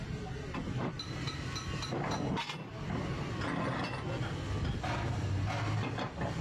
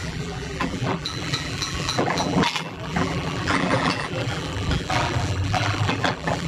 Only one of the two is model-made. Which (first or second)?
second